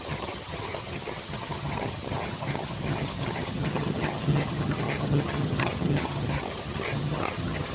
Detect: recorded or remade remade